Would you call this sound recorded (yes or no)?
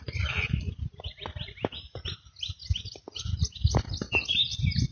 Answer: yes